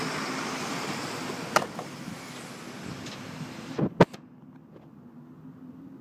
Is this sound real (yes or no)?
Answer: yes